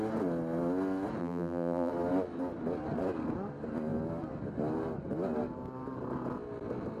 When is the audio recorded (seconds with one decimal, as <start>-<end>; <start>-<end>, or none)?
0.0-1.2; 1.9-7.0

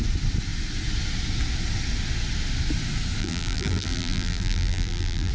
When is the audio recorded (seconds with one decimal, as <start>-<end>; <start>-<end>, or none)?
0.0-3.2